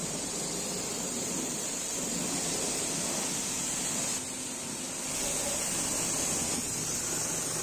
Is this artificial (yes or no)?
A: no